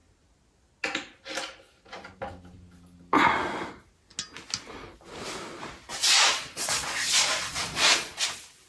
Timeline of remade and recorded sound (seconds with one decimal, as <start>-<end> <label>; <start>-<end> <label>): 0.0-6.0 recorded; 6.0-8.2 remade; 8.2-8.7 recorded